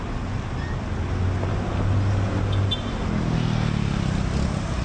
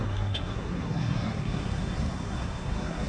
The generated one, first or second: second